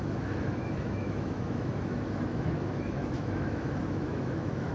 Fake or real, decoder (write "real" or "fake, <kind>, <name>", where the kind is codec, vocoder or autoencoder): fake, autoencoder, DAC-VAE